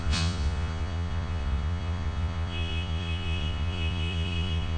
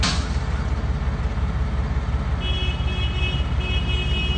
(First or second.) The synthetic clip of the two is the first